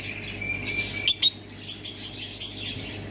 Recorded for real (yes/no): yes